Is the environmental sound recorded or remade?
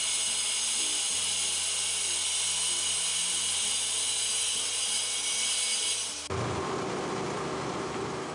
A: recorded